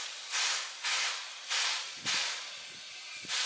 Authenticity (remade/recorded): recorded